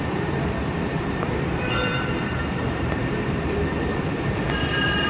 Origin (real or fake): fake